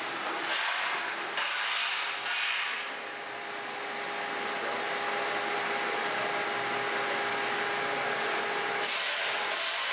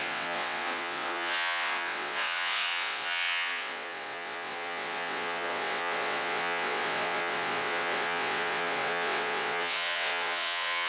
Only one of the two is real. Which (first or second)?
first